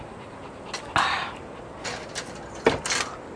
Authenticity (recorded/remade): recorded